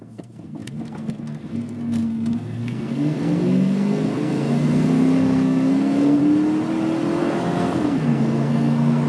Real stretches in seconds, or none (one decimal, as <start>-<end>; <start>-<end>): 6.2-7.2